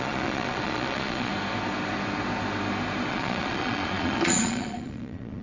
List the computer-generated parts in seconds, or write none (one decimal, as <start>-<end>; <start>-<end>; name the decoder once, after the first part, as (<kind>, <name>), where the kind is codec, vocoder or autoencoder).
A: 0.0-1.3 (vocoder, Vocos); 3.1-5.4